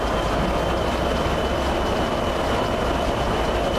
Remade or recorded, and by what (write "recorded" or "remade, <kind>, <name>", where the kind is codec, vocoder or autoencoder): recorded